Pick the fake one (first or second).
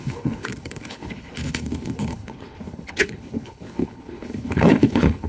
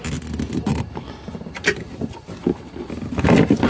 first